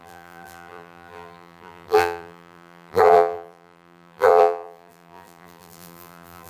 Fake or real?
fake